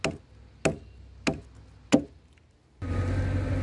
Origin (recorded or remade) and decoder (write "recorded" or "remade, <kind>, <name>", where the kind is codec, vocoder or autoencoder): recorded